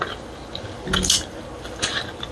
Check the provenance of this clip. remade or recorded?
recorded